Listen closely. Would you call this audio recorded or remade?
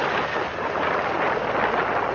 recorded